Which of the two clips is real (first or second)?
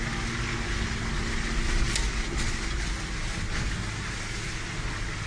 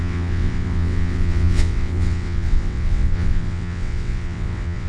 first